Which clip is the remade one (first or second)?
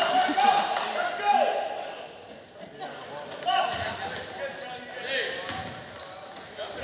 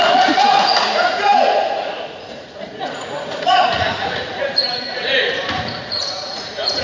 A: second